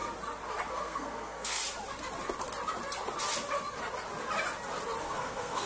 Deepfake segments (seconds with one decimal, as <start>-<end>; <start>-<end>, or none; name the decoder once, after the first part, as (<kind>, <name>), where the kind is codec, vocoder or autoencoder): 0.7-1.6 (codec, SNAC); 5.0-5.7